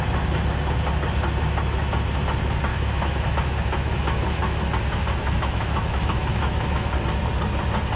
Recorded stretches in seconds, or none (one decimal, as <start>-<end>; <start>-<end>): 0.0-2.7; 4.6-5.2; 6.9-8.0